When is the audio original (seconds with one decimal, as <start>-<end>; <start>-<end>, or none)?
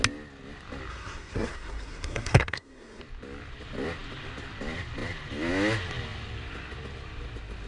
0.0-0.9; 3.0-7.7